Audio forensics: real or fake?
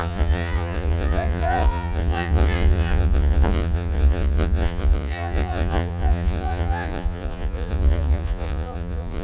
fake